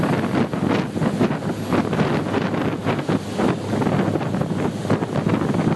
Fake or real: real